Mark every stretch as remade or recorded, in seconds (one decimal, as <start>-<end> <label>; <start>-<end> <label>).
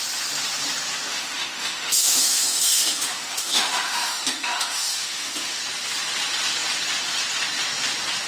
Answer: 0.0-1.1 recorded; 1.1-5.6 remade; 5.6-8.3 recorded